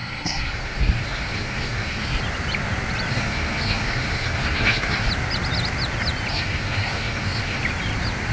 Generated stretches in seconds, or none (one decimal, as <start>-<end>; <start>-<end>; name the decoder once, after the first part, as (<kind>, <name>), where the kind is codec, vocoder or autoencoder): 0.0-2.2 (codec, SNAC); 3.1-5.1; 6.3-7.6